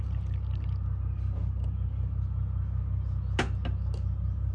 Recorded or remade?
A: recorded